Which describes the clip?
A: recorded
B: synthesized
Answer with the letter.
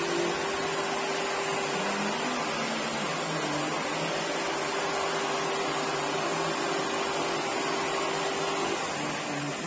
A